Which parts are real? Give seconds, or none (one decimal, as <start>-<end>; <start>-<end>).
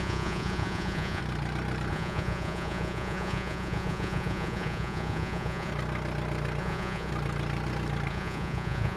1.2-1.9; 5.7-6.6; 7.1-8.1